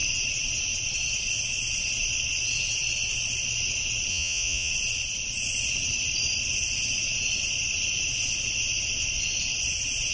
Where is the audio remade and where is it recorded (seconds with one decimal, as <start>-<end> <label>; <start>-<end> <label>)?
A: 0.0-4.1 recorded; 4.1-4.7 remade; 4.7-10.1 recorded